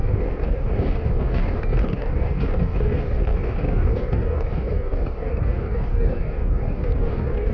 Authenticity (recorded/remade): remade